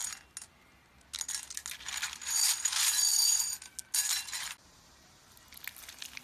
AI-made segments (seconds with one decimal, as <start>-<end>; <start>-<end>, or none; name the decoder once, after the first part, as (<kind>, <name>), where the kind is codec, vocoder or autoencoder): none